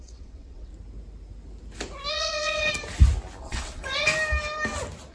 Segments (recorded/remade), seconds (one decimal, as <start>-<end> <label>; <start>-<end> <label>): 0.0-0.7 remade; 0.7-2.1 recorded; 2.1-2.7 remade; 2.7-3.4 recorded; 3.4-4.1 remade; 4.1-5.1 recorded